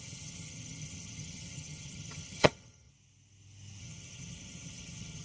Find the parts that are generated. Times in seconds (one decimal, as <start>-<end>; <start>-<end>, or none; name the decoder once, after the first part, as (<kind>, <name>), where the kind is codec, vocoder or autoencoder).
0.0-2.9 (vocoder, HiFi-GAN); 3.8-5.2